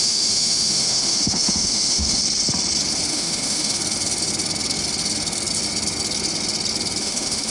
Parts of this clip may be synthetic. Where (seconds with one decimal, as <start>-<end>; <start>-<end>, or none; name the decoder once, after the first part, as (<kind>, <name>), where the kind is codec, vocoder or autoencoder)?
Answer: 0.0-2.2 (autoencoder, DAC-VAE); 3.1-3.8; 7.0-7.5